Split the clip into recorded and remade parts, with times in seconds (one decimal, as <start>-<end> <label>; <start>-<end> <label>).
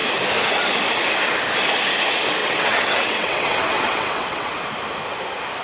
0.0-2.4 recorded; 2.4-4.5 remade; 4.5-5.6 recorded